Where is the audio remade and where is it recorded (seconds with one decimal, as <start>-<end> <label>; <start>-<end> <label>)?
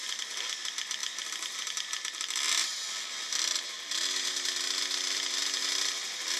0.0-6.4 recorded